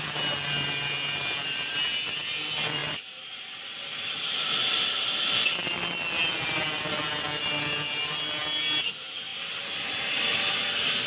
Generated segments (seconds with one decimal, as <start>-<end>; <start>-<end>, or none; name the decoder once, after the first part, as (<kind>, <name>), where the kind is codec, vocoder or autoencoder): none